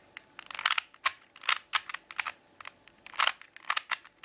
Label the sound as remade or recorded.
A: recorded